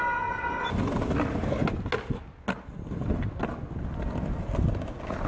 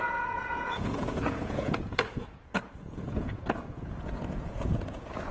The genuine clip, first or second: first